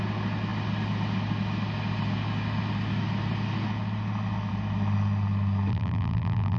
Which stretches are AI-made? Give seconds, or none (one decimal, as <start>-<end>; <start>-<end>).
5.7-6.6